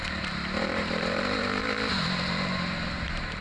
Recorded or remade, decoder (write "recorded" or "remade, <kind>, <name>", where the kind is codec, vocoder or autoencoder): remade, vocoder, BigVGAN v2